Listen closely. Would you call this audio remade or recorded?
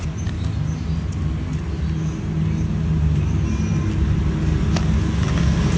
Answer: recorded